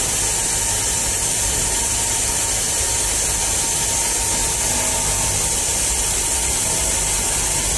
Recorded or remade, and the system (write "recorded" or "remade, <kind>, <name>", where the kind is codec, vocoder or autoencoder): recorded